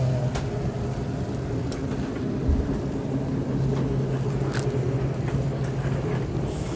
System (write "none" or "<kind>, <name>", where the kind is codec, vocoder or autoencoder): none